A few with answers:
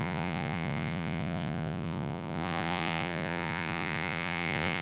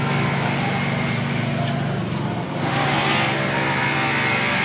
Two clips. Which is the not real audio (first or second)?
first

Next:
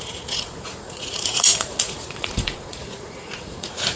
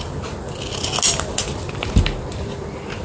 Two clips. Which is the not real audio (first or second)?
first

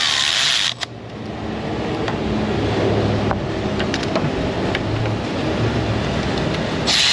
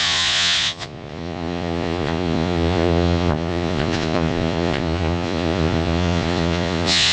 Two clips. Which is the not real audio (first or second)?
second